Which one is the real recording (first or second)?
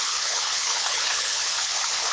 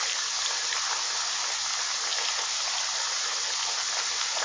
second